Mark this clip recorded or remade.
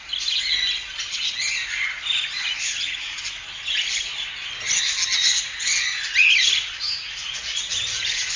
recorded